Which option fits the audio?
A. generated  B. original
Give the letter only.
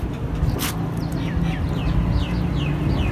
B